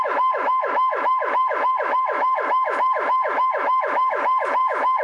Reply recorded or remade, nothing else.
remade